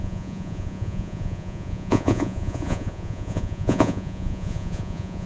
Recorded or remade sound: remade